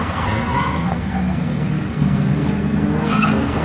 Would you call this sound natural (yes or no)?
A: no